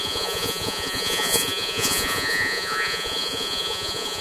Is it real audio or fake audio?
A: fake